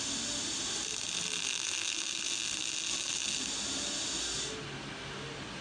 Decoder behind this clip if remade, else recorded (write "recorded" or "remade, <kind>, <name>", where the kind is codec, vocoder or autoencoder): recorded